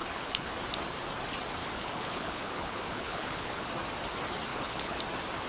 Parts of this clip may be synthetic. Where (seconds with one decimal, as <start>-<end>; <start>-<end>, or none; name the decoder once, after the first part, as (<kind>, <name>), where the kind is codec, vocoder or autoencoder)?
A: 0.0-0.5 (codec, HILCodec); 1.6-3.7; 4.5-5.0